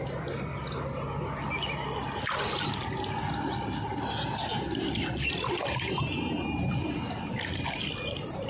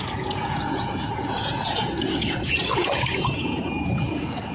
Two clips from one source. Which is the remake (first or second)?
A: second